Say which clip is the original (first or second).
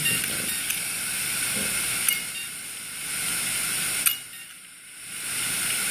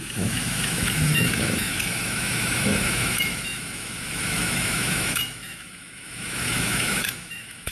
first